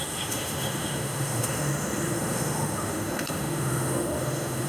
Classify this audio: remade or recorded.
remade